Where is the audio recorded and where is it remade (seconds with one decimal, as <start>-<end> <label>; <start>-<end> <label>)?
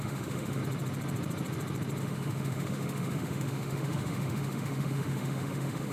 0.0-0.6 remade; 0.6-2.0 recorded; 2.0-5.9 remade